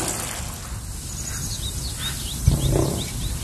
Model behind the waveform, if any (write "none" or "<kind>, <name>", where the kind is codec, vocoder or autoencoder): none